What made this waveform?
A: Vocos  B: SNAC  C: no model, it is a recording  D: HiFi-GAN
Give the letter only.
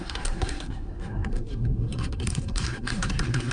B